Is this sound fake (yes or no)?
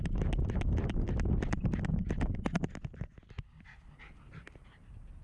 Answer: no